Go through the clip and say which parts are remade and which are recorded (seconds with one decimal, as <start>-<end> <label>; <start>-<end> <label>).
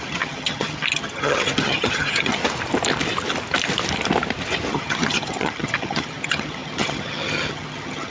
0.0-2.4 remade; 2.4-4.7 recorded; 4.7-8.1 remade